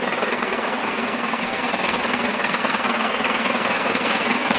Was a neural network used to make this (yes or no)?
yes